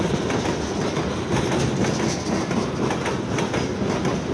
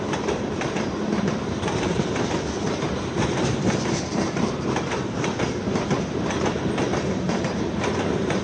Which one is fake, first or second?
second